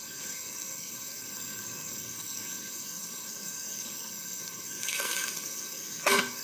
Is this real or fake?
fake